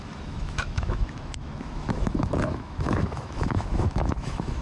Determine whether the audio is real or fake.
fake